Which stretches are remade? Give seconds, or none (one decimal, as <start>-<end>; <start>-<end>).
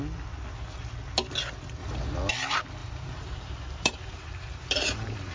2.8-5.3